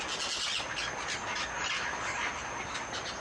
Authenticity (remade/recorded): recorded